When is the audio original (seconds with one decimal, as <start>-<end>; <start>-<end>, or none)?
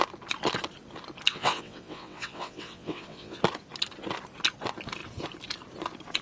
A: 0.0-1.3; 3.4-6.2